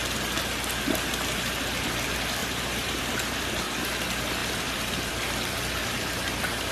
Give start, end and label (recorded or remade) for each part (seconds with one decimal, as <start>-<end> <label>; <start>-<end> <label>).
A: 0.0-2.4 recorded; 2.4-3.0 remade; 3.0-4.4 recorded; 4.4-5.1 remade; 5.1-6.7 recorded